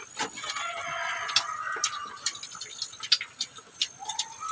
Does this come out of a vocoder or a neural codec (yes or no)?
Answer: no